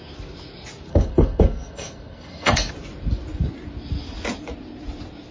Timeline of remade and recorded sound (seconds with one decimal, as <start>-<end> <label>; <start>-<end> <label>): 0.0-0.9 recorded; 0.9-2.7 remade; 2.7-5.3 recorded